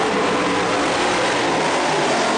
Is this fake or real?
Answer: real